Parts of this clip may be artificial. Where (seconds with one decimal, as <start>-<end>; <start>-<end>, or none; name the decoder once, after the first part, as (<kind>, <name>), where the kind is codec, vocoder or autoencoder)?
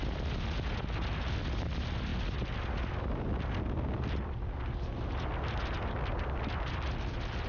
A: none